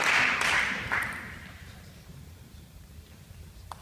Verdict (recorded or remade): remade